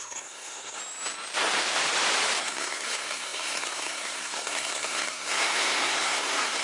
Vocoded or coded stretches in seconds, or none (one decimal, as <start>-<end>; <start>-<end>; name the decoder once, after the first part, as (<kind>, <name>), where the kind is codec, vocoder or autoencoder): 0.0-0.8 (codec, SNAC); 2.4-6.6